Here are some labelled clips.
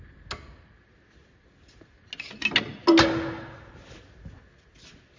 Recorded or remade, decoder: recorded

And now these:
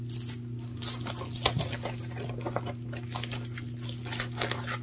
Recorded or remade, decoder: recorded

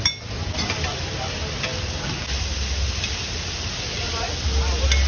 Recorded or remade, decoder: recorded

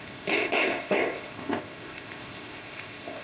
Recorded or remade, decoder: remade, codec, ZipCodec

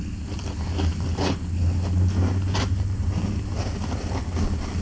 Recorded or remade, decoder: recorded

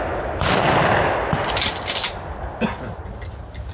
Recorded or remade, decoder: recorded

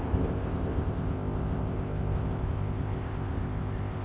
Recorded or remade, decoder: remade, codec, ZipCodec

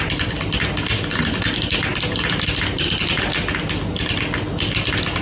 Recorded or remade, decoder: recorded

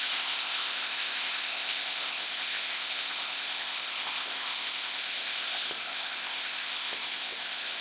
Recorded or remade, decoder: remade, codec, ZipCodec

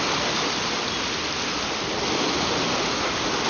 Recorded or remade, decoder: recorded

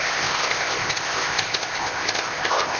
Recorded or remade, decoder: remade, codec, ZipCodec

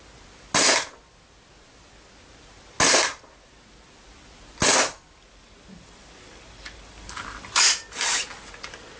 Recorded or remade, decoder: recorded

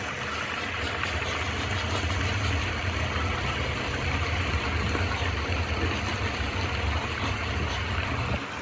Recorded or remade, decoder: recorded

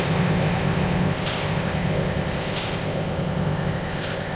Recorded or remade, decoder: remade, codec, ZipCodec